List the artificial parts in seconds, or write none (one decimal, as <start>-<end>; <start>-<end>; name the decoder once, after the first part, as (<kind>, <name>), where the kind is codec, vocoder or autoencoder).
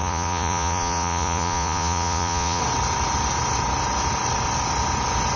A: 0.0-2.6 (vocoder, Vocos)